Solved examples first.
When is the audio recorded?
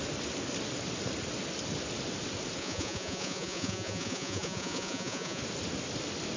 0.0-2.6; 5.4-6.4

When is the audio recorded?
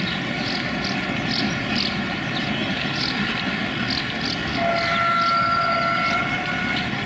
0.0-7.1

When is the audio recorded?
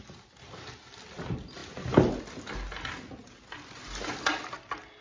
0.0-5.0